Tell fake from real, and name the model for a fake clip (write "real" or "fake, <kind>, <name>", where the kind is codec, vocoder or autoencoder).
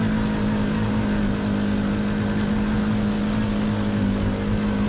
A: real